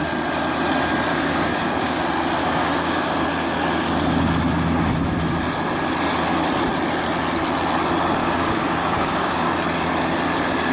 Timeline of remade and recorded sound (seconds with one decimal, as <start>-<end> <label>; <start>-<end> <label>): 0.0-1.1 recorded; 1.1-2.0 remade; 2.0-2.4 recorded; 2.4-3.2 remade; 3.2-8.2 recorded; 8.2-9.5 remade; 9.5-10.7 recorded